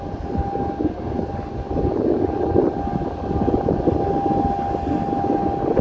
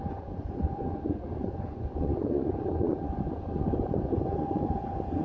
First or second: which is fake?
second